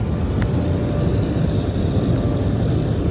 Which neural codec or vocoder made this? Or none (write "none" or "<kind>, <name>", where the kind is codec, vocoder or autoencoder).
none